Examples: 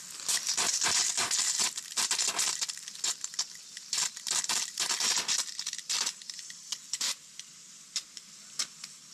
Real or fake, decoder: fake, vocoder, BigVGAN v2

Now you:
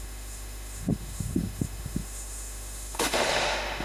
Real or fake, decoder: fake, autoencoder, DAC-VAE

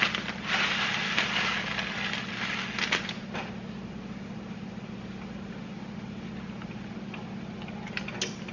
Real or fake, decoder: real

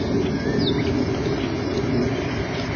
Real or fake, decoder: real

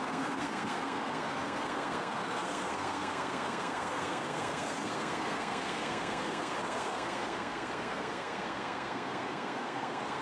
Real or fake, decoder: fake, codec, SNAC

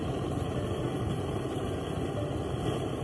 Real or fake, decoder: real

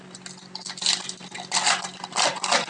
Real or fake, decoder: real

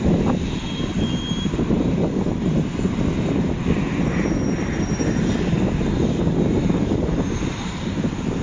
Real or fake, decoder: real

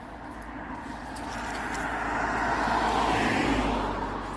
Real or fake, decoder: real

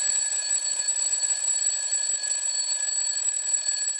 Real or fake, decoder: fake, vocoder, Vocos